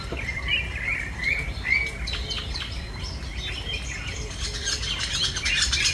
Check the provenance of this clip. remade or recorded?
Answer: recorded